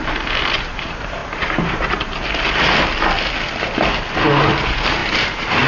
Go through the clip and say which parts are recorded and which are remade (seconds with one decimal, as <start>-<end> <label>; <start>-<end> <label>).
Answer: 0.0-1.2 remade; 1.2-4.6 recorded; 4.6-5.7 remade